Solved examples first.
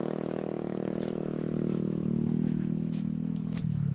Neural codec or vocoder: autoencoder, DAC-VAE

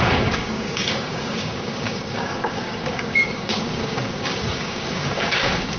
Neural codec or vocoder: codec, DAC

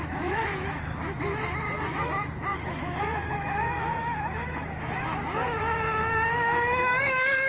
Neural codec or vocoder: autoencoder, DAC-VAE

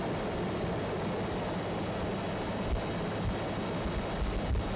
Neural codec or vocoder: none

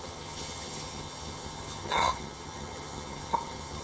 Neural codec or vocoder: vocoder, HiFi-GAN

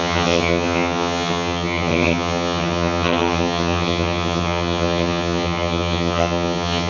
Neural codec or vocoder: vocoder, HiFi-GAN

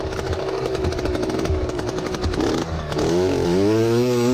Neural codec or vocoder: codec, DAC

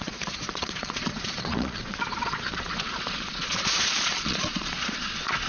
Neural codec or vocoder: vocoder, Vocos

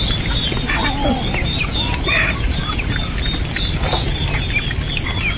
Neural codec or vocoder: none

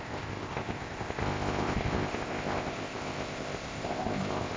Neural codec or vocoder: codec, ZipCodec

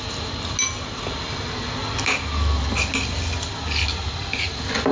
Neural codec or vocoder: none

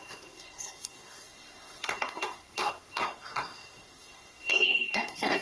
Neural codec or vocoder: codec, SNAC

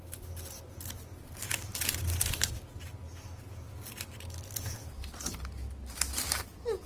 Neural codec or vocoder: none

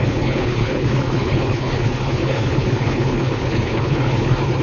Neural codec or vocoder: codec, HILCodec